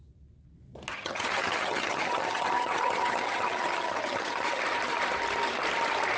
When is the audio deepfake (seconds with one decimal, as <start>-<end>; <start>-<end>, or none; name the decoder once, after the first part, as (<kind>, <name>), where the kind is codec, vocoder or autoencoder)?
0.9-4.6 (vocoder, HiFi-GAN)